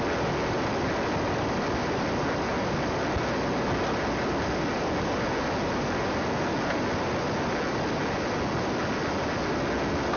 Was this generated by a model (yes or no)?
no